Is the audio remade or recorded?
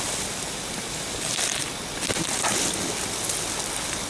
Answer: recorded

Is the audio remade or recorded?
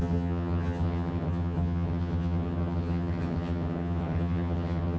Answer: remade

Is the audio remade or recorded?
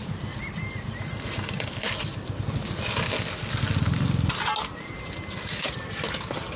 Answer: recorded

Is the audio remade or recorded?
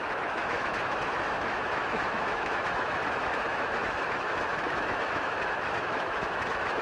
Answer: remade